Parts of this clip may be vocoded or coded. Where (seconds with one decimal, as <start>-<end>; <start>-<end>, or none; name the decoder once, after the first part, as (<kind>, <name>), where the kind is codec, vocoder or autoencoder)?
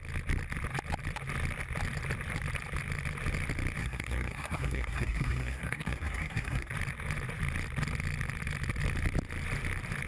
3.8-6.7 (codec, SNAC)